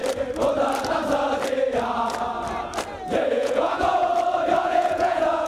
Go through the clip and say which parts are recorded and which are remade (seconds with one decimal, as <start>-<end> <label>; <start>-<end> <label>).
0.0-3.3 recorded; 3.3-4.1 remade; 4.1-4.6 recorded; 4.6-5.5 remade

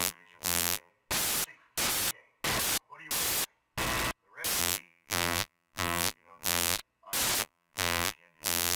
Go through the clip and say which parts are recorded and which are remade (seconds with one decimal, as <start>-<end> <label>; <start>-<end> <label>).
0.0-0.9 remade; 0.9-4.6 recorded; 4.6-6.8 remade; 6.8-7.4 recorded; 7.4-8.8 remade